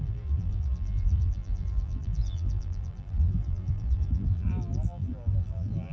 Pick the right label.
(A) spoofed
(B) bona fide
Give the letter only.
A